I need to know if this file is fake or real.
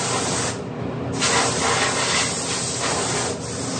real